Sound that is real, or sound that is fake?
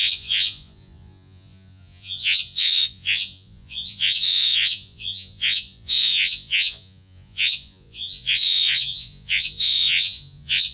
fake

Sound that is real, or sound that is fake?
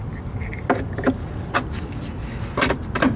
real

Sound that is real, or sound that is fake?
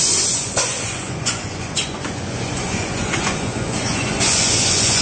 fake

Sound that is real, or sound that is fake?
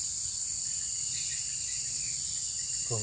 real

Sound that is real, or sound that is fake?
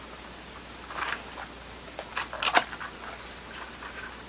real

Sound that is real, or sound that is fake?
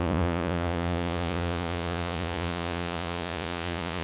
fake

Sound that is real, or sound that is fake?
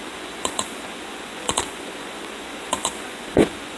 fake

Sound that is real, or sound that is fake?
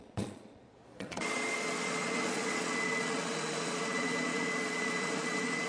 fake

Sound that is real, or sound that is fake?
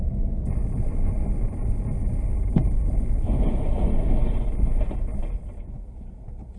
real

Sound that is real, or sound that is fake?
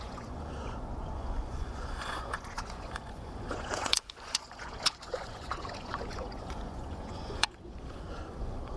fake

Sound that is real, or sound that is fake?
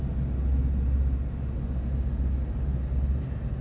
real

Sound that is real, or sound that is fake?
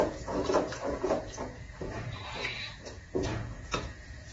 fake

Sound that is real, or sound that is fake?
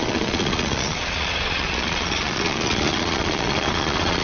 fake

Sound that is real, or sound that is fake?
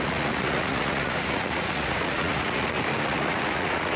fake